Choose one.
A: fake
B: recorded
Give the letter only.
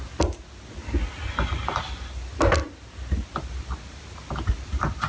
B